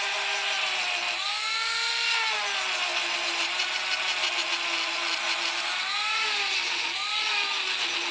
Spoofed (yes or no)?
no